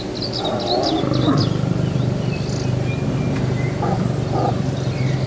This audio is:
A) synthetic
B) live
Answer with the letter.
B